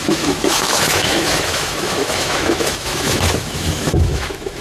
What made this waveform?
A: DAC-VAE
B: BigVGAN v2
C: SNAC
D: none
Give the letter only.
A